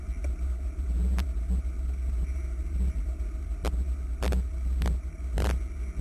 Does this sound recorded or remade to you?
recorded